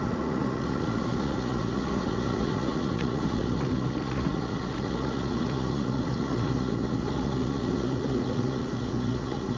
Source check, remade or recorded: remade